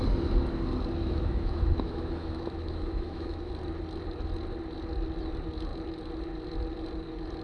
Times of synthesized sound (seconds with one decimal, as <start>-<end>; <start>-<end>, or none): 1.0-3.5